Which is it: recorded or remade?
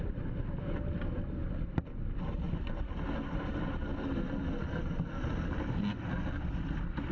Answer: recorded